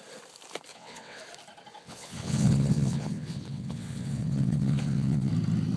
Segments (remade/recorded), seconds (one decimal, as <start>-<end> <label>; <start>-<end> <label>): 0.0-0.7 recorded; 0.7-1.2 remade; 1.2-1.8 recorded; 1.8-5.3 remade; 5.3-5.8 recorded